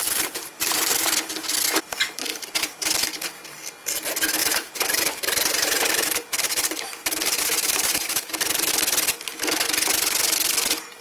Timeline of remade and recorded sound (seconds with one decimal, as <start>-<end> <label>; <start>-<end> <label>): 0.0-1.1 remade; 1.1-2.3 recorded; 2.3-3.3 remade; 3.3-4.4 recorded; 4.4-8.7 remade; 8.7-11.0 recorded